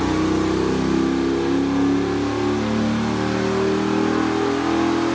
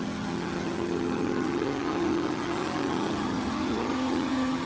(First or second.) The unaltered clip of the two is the first